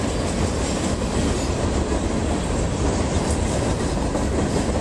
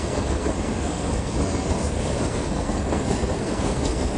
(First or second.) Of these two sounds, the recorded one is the first